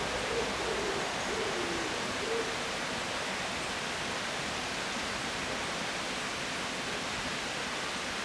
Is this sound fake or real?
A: real